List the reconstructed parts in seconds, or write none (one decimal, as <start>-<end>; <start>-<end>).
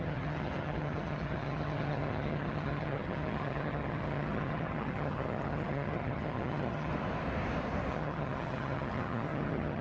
0.0-6.9; 7.9-9.8